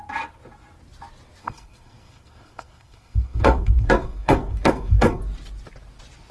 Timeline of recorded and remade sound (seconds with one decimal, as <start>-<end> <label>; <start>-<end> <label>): 0.0-1.4 recorded; 1.4-5.2 remade; 5.2-6.3 recorded